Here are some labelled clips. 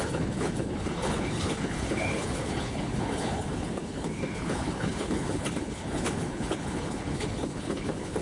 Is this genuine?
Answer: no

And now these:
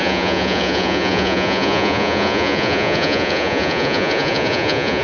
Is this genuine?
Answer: no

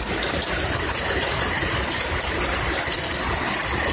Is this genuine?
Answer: yes